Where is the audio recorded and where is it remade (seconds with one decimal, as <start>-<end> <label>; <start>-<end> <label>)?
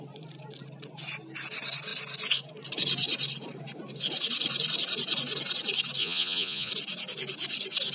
0.0-6.0 recorded; 6.0-6.7 remade; 6.7-7.9 recorded